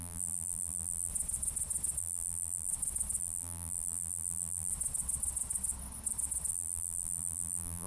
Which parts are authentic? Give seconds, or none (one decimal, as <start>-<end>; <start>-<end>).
1.1-2.0; 2.7-3.2; 4.7-6.5